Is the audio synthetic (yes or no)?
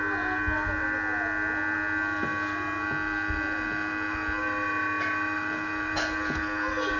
no